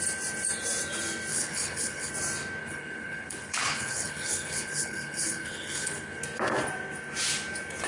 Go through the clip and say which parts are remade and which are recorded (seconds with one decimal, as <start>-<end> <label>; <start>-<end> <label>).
0.0-1.3 recorded; 1.3-2.1 remade; 2.1-2.6 recorded; 2.6-6.2 remade; 6.2-7.9 recorded